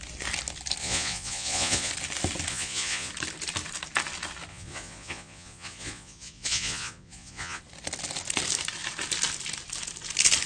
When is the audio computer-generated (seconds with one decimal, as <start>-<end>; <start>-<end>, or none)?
0.8-1.9; 2.5-3.1; 4.5-7.6